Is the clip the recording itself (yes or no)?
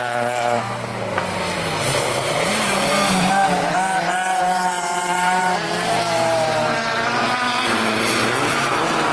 no